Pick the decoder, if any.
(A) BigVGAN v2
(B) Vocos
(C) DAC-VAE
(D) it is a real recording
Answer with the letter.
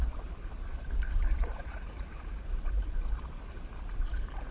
A